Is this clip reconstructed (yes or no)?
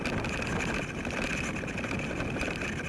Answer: no